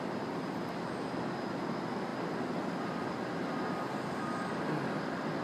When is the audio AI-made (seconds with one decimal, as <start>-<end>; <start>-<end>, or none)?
none